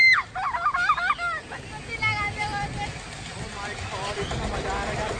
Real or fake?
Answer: real